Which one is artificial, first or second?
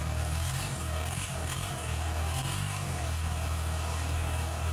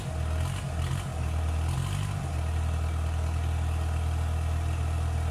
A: first